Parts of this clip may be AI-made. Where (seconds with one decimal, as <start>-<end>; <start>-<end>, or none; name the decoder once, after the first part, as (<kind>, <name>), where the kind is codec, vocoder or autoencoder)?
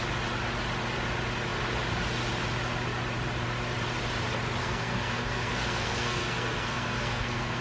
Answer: 4.6-7.6 (codec, SNAC)